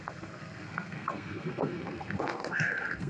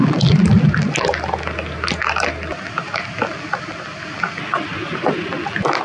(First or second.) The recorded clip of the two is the second